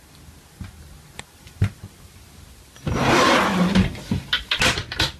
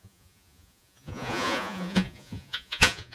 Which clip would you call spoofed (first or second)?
second